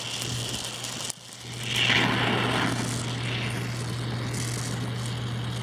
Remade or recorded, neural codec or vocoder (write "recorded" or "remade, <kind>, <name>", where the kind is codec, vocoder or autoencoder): recorded